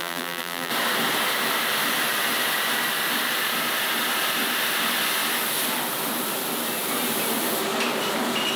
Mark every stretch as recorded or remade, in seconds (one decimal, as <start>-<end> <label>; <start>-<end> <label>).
0.0-0.7 remade; 0.7-8.6 recorded

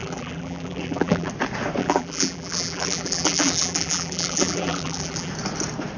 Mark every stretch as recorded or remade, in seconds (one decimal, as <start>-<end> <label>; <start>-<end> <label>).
0.0-1.3 remade; 1.3-1.8 recorded; 1.8-5.3 remade; 5.3-6.0 recorded